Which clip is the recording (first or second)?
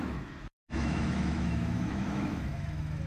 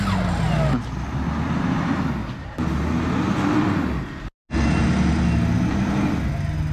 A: second